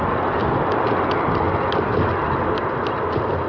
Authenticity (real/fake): real